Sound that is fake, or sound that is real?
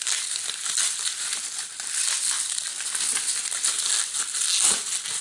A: real